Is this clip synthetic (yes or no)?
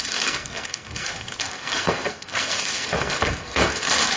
yes